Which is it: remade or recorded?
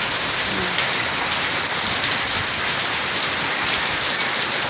recorded